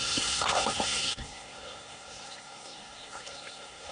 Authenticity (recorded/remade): remade